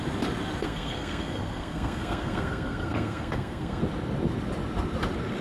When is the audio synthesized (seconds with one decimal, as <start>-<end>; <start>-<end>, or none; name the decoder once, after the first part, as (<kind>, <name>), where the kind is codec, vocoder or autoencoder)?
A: 0.6-3.8 (codec, SNAC)